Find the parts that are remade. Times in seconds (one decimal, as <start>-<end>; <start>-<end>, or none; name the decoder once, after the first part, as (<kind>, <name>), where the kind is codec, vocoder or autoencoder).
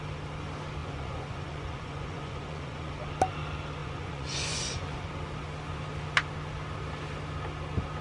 0.8-2.9 (vocoder, Vocos); 3.8-5.1